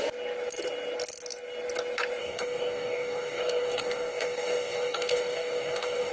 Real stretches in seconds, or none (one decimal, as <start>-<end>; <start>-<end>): 0.0-2.2